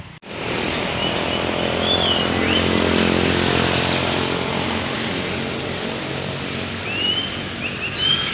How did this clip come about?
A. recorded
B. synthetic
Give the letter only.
A